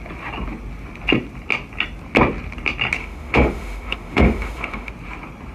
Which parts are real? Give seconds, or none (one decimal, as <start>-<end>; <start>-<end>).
0.0-3.0; 4.9-5.5